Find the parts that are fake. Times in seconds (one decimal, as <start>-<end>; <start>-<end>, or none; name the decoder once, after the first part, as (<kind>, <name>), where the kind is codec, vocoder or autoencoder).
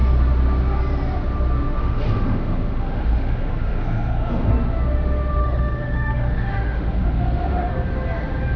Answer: 1.8-4.5 (autoencoder, DAC-VAE); 5.4-7.7